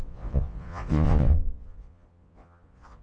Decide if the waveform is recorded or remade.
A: remade